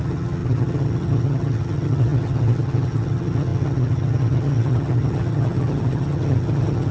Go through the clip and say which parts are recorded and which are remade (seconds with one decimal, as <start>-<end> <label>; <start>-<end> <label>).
0.0-6.9 remade